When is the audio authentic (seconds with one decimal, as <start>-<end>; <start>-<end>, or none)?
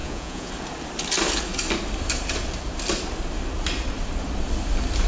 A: 0.5-5.1